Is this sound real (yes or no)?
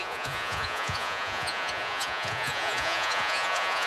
no